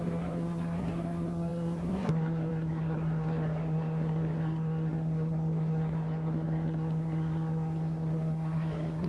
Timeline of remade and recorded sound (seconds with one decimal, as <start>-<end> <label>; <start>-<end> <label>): 0.0-9.1 remade